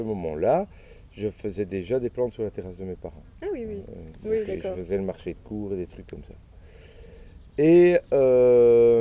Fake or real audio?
real